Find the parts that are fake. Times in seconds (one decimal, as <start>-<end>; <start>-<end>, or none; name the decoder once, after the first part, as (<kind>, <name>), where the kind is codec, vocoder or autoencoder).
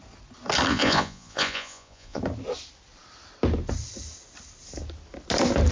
0.7-2.2 (vocoder, Vocos)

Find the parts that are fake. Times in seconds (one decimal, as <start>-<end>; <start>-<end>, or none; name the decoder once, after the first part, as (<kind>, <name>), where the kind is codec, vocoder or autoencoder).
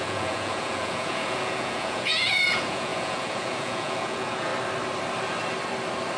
0.0-4.5 (vocoder, Vocos)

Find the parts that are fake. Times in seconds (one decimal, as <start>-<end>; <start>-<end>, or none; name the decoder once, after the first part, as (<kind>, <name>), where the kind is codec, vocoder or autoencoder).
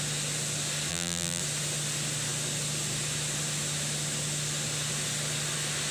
0.9-1.4 (vocoder, BigVGAN v2)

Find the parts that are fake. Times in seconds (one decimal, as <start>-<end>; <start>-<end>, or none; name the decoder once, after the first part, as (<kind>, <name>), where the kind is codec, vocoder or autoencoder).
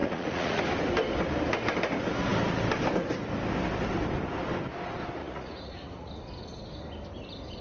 0.0-0.6 (vocoder, Vocos); 5.2-6.1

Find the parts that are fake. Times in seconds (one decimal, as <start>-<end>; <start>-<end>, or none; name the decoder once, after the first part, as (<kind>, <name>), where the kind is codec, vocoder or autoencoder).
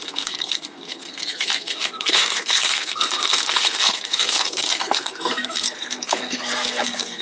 0.0-7.2 (codec, SNAC)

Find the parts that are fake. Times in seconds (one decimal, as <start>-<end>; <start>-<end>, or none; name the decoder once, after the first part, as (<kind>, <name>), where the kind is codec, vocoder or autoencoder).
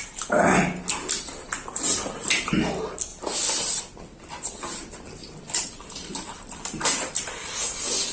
3.1-3.8 (vocoder, BigVGAN v2)